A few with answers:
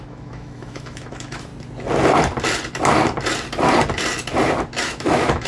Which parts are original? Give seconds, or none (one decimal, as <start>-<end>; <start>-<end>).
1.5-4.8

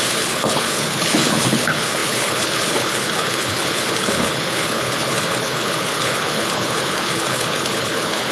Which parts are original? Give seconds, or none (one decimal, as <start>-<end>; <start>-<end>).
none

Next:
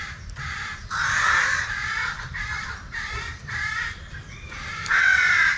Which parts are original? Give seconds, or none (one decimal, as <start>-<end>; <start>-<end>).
0.0-5.6

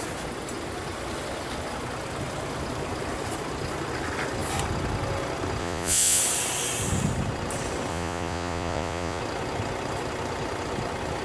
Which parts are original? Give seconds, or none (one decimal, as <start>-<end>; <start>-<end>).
0.0-5.6; 6.2-7.9; 9.2-11.2